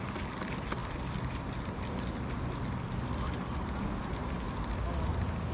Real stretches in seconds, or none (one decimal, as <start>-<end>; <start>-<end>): 0.0-5.5

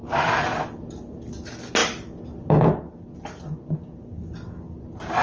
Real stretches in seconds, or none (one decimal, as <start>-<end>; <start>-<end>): 1.3-5.2